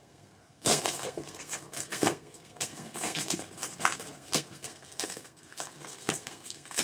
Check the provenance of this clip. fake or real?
fake